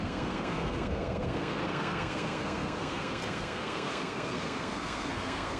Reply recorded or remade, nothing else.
remade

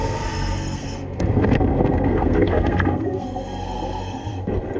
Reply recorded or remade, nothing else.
remade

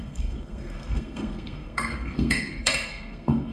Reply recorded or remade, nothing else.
remade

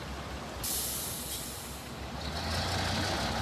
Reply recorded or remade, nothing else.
recorded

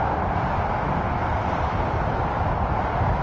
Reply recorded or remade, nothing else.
recorded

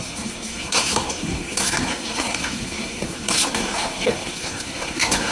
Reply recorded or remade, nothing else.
remade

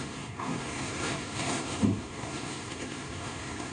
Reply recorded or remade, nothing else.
remade